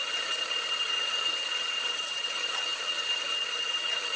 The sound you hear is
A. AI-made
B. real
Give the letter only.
A